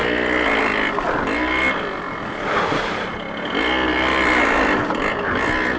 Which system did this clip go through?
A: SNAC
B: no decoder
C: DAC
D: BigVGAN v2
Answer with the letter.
B